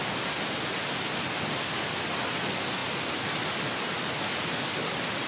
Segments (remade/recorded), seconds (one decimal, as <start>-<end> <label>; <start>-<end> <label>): 0.0-5.3 recorded

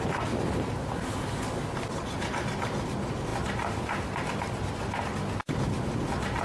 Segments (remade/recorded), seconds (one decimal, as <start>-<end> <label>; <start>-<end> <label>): 0.0-6.4 recorded